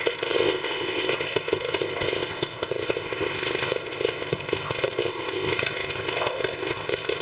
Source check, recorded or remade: remade